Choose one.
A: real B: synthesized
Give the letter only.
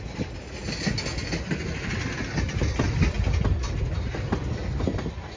A